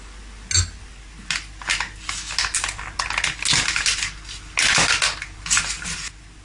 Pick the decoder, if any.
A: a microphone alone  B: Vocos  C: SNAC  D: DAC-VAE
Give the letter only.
A